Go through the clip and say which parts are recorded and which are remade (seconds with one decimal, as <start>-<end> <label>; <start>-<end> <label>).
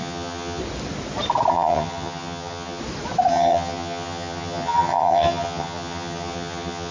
0.0-0.6 remade; 0.6-1.5 recorded; 1.5-2.8 remade; 2.8-3.3 recorded; 3.3-6.9 remade